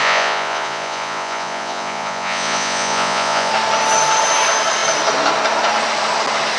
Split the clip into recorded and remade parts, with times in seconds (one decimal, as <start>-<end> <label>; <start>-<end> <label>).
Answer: 0.0-3.5 remade; 3.5-6.6 recorded

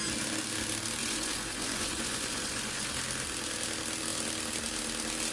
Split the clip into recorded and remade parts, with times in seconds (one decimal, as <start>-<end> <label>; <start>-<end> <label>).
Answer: 0.0-1.0 recorded; 1.0-2.9 remade; 2.9-5.3 recorded

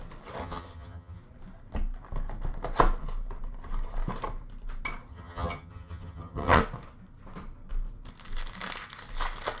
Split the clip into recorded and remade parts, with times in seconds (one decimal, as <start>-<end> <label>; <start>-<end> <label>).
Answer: 0.0-0.4 recorded; 0.4-1.2 remade; 1.2-5.1 recorded; 5.1-6.6 remade; 6.6-9.6 recorded